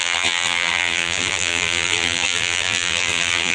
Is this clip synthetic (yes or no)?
yes